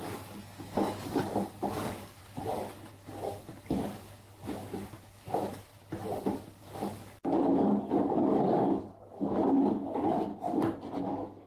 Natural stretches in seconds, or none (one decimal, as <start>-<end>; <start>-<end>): 2.2-2.9; 5.7-6.5; 10.3-11.0